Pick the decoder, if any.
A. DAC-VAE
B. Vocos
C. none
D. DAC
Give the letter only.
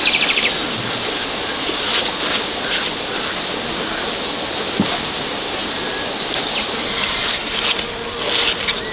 C